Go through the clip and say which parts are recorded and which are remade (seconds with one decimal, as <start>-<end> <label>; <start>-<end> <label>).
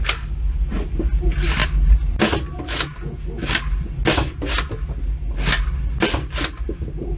0.0-7.2 recorded